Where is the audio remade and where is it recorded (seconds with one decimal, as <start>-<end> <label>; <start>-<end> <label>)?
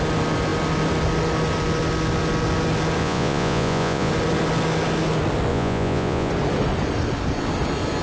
0.0-3.0 recorded; 3.0-4.1 remade; 4.1-5.5 recorded; 5.5-6.3 remade; 6.3-8.0 recorded